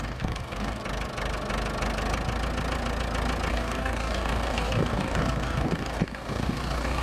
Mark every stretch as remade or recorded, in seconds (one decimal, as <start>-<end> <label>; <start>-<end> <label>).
0.0-0.8 remade; 0.8-3.5 recorded; 3.5-7.0 remade